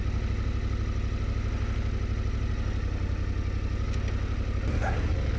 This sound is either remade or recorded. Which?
recorded